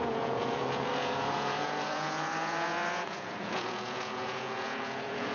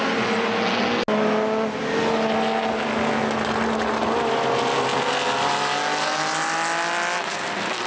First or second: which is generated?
first